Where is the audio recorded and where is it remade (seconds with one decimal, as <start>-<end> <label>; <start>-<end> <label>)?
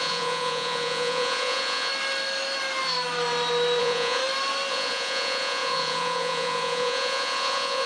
0.0-1.9 remade; 1.9-3.8 recorded; 3.8-4.2 remade; 4.2-4.7 recorded; 4.7-7.9 remade